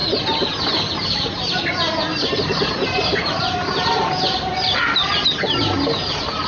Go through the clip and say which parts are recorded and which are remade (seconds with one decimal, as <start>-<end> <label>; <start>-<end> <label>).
0.0-2.1 recorded; 2.1-4.8 remade; 4.8-6.5 recorded